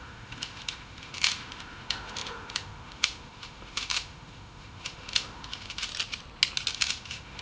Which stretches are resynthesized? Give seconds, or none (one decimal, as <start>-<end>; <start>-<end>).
0.0-5.9; 6.7-7.4